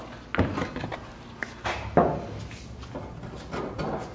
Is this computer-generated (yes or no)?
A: no